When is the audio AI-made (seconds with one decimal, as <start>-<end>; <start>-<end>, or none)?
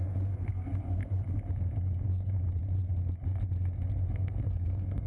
0.0-1.0; 4.1-5.1